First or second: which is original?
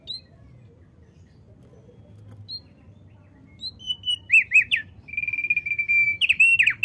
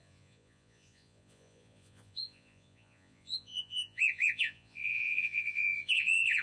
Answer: first